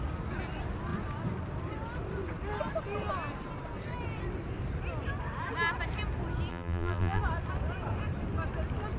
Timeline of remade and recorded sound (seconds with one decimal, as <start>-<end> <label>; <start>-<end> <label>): 0.0-6.5 recorded; 6.5-7.2 remade; 7.2-9.0 recorded

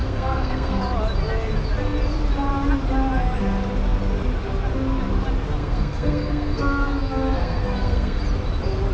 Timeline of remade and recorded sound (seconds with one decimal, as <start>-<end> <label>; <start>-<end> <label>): 0.0-0.8 remade; 0.8-5.6 recorded; 5.6-8.2 remade; 8.2-8.9 recorded

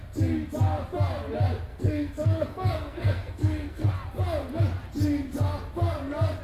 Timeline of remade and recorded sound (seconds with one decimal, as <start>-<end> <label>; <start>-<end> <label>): 0.0-1.7 recorded; 1.7-3.9 remade; 3.9-6.4 recorded

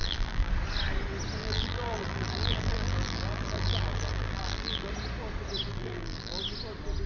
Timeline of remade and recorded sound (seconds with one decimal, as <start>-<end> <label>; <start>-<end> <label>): 0.0-0.5 remade; 0.5-1.4 recorded; 1.4-4.9 remade; 4.9-5.7 recorded; 5.7-6.4 remade; 6.4-7.1 recorded

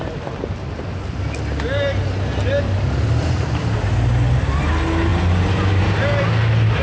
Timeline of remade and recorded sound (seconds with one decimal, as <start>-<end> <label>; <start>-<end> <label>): 0.0-6.8 recorded